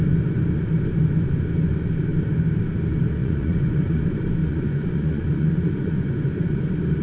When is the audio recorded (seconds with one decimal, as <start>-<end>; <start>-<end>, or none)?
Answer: 0.0-3.2; 4.0-4.4; 6.6-7.0